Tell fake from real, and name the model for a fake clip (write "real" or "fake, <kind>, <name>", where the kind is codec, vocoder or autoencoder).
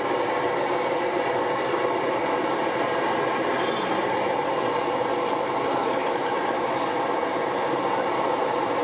real